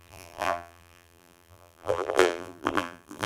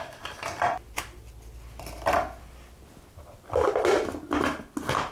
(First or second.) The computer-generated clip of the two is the first